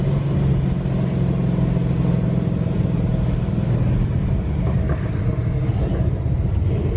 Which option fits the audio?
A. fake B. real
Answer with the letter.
B